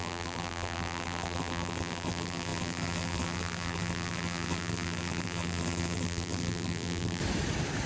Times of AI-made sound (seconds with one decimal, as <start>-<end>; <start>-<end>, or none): 0.0-7.2